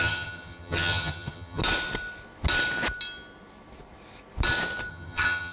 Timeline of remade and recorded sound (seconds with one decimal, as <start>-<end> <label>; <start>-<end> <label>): 0.0-1.6 remade; 1.6-4.9 recorded; 4.9-5.5 remade